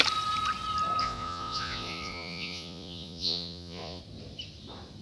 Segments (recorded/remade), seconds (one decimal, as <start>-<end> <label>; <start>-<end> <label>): 0.0-1.0 recorded; 1.0-4.0 remade; 4.0-5.0 recorded